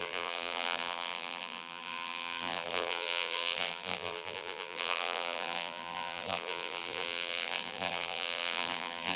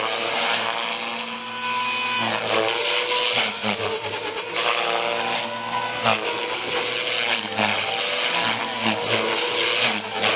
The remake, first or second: first